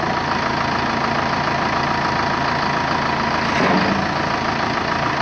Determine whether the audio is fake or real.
real